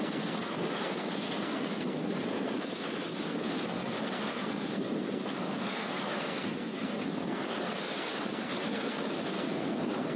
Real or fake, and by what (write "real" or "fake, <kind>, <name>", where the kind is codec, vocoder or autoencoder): fake, codec, SNAC